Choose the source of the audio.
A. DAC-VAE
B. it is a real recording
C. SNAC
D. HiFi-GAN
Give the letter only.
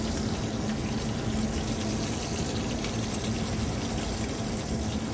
B